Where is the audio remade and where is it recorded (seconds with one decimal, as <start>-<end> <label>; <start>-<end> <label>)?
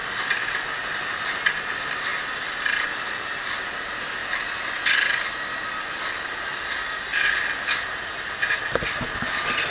0.0-2.1 recorded; 2.1-3.0 remade; 3.0-9.7 recorded